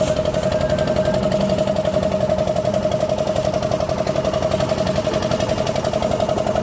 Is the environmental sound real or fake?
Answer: real